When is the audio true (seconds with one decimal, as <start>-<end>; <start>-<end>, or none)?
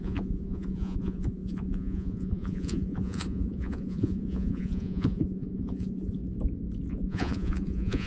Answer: 6.2-6.9